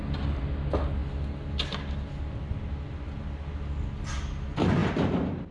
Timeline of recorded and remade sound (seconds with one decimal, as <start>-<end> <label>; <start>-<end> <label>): 0.0-4.8 recorded; 4.8-5.5 remade